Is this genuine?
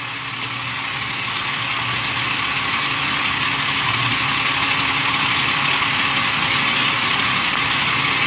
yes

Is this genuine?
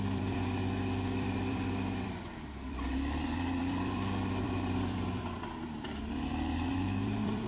no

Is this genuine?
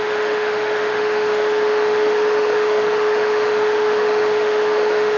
no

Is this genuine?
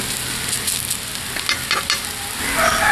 yes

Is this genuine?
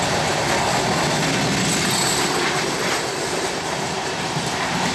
yes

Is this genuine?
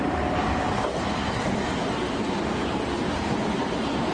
yes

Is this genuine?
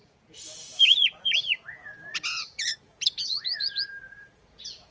no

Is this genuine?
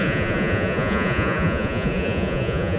no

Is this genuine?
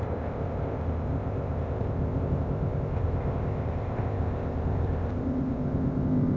no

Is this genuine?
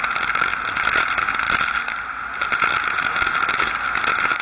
yes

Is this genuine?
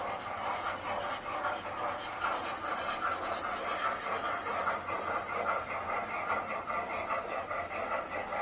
yes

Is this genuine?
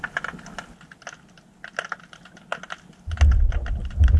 yes